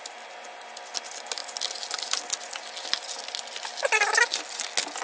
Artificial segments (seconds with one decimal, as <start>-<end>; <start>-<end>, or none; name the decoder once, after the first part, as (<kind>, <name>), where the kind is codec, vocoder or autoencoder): none